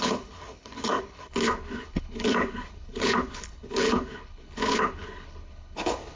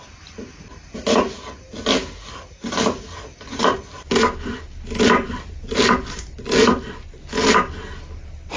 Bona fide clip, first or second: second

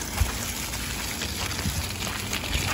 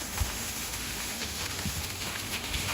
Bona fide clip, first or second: first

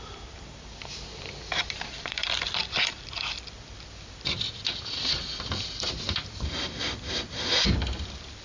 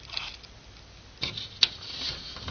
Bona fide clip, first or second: second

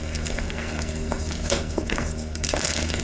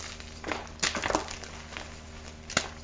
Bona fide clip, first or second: second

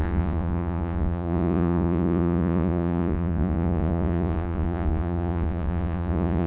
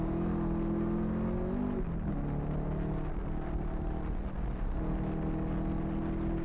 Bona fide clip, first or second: second